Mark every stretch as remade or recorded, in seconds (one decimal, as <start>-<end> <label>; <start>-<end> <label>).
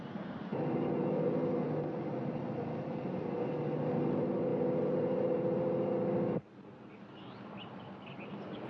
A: 0.0-8.7 recorded